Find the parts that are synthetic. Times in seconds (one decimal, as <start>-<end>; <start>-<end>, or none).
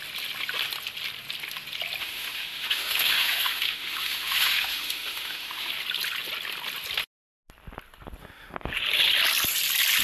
2.0-5.7; 8.2-8.7